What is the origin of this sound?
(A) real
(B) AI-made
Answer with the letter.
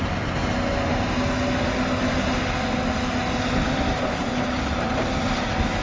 A